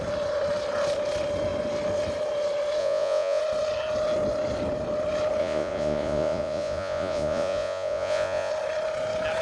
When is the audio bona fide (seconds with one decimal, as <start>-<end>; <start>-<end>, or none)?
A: 0.0-2.8; 3.4-5.4; 8.5-9.4